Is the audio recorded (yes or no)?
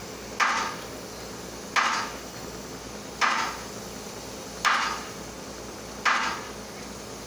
yes